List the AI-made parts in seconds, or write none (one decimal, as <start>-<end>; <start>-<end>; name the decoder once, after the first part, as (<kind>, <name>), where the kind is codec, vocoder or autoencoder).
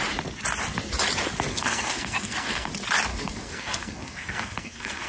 1.5-2.7 (codec, SNAC); 3.1-5.1